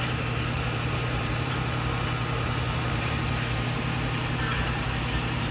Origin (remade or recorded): remade